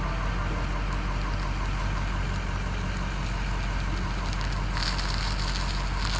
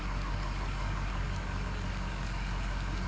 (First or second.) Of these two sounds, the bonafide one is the first